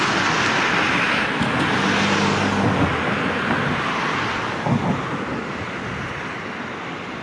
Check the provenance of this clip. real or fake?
real